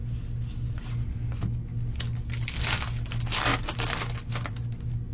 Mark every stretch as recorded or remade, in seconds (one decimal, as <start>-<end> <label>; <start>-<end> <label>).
0.0-5.1 recorded